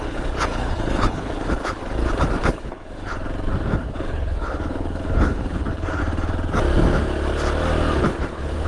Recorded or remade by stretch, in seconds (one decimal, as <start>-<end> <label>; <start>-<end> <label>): 0.0-1.8 remade; 1.8-2.5 recorded; 2.5-3.1 remade; 3.1-3.8 recorded; 3.8-6.0 remade; 6.0-8.0 recorded; 8.0-8.7 remade